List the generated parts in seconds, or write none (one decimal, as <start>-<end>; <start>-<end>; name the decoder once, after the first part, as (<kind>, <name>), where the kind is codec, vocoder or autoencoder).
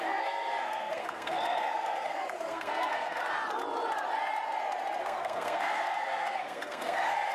0.0-3.2 (codec, SNAC); 5.0-7.3